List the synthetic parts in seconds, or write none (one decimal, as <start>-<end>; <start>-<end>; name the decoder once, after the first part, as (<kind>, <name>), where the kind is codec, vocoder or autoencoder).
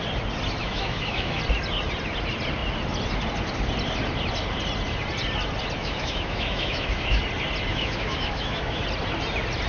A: 0.6-1.4 (autoencoder, DAC-VAE); 5.8-7.2; 7.7-8.8